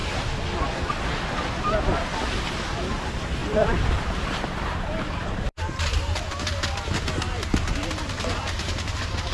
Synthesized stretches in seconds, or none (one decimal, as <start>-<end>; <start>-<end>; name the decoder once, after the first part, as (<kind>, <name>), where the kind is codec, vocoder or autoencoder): 3.4-6.3 (vocoder, BigVGAN v2)